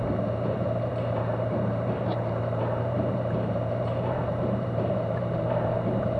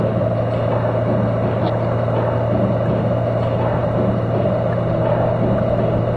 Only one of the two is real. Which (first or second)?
second